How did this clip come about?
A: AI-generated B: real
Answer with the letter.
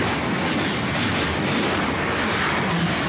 B